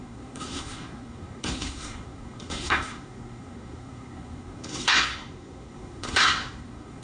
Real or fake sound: fake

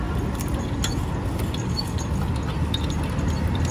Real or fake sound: real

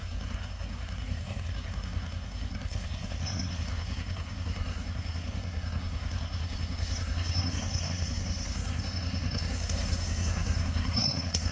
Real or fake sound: fake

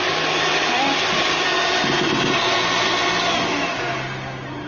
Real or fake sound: real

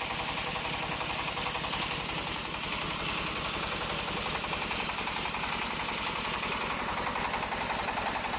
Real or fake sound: real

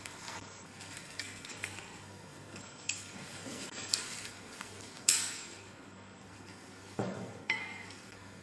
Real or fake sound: fake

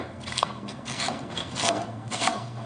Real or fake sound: fake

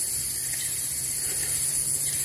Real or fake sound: real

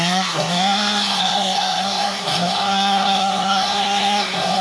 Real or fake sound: fake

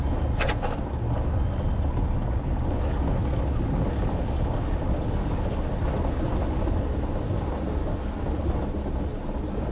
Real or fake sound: real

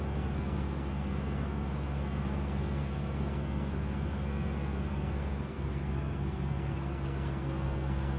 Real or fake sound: fake